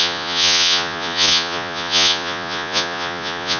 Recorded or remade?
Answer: remade